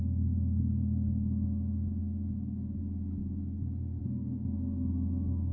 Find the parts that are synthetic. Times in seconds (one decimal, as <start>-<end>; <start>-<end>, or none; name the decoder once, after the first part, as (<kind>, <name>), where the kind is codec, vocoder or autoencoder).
2.0-2.8 (autoencoder, DAC-VAE)